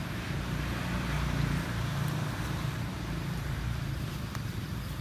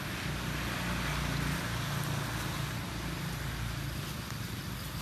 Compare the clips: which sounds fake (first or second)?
first